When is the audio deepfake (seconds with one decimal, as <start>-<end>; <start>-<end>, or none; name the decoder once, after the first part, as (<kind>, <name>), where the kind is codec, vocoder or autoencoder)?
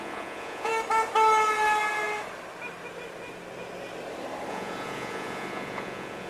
0.0-0.7 (vocoder, Vocos); 4.5-6.3